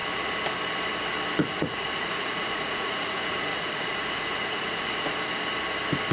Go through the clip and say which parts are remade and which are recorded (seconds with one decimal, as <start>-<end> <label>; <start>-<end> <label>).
0.0-1.4 recorded; 1.4-5.1 remade; 5.1-6.1 recorded